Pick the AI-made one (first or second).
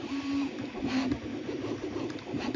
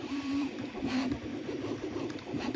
second